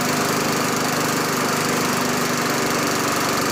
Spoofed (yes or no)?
no